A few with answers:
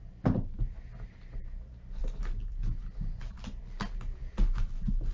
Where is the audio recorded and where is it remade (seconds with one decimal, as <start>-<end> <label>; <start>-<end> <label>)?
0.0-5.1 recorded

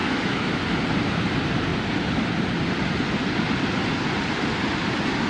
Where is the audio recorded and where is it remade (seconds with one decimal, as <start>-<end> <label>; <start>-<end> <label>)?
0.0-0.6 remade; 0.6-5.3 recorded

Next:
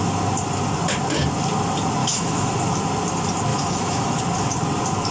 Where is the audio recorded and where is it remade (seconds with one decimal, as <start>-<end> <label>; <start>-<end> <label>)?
0.0-2.0 recorded; 2.0-2.5 remade; 2.5-3.5 recorded; 3.5-4.2 remade; 4.2-5.1 recorded

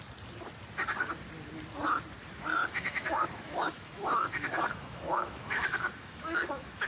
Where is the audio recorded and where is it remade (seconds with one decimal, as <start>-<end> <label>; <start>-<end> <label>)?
0.0-2.6 recorded; 2.6-6.9 remade

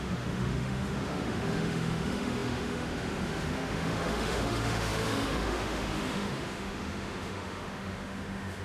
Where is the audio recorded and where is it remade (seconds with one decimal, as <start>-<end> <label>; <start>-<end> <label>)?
0.0-8.6 remade

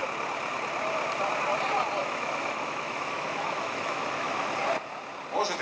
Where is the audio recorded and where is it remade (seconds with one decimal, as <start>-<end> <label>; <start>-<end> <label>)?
0.0-2.0 recorded; 2.0-4.5 remade; 4.5-5.6 recorded